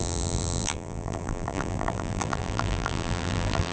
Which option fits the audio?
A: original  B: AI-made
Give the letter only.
B